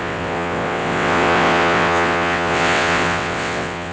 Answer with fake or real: fake